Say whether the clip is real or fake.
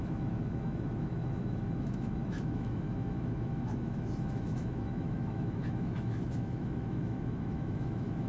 fake